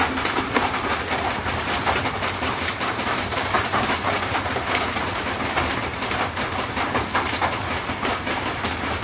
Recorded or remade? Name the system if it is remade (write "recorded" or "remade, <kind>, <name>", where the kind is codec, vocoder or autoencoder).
remade, vocoder, BigVGAN v2